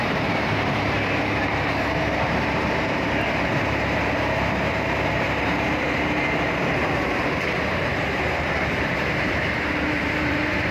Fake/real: fake